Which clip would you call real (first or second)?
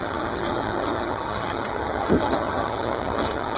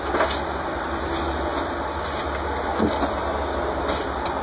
second